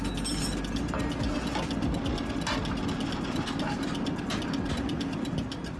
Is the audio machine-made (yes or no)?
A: no